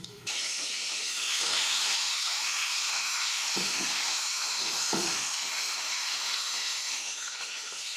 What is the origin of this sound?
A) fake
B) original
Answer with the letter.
A